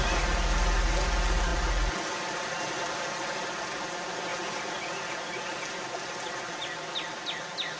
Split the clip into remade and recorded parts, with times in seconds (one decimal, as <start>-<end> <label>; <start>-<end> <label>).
0.0-7.8 recorded